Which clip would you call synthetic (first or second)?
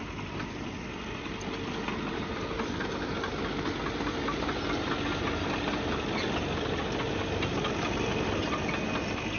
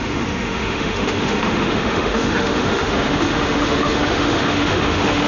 second